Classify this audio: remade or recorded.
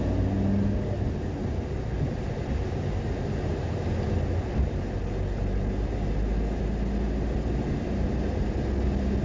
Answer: recorded